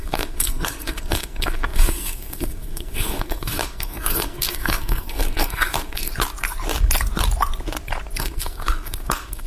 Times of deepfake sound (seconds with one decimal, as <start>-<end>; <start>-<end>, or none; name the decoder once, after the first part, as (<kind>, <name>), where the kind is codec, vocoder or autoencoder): 0.0-6.1 (codec, SNAC); 8.2-9.5